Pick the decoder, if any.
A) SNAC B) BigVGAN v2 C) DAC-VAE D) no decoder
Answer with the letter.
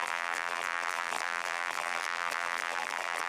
B